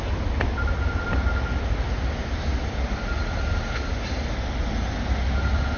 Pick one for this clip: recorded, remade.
recorded